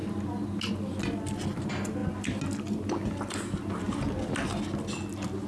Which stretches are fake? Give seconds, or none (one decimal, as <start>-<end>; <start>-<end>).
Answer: none